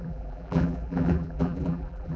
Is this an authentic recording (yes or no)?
no